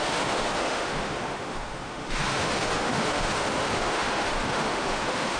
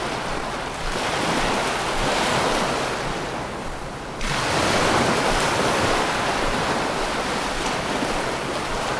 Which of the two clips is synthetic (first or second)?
first